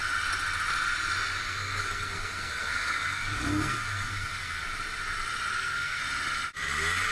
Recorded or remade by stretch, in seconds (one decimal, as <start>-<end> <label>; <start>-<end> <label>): 0.0-1.4 recorded; 1.4-4.7 remade; 4.7-5.5 recorded; 5.5-6.0 remade; 6.0-7.1 recorded